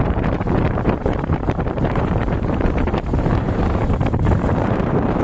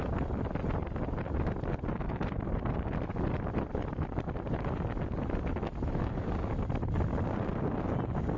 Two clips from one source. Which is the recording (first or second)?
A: second